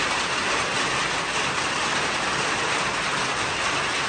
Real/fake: real